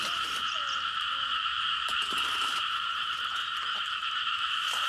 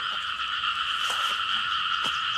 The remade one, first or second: first